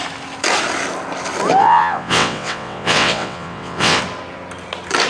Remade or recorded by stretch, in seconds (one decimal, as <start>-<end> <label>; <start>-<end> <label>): 0.0-1.6 recorded; 1.6-4.0 remade; 4.0-5.1 recorded